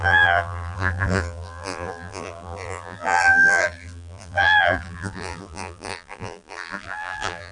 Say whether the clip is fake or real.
fake